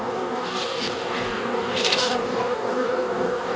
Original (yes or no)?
no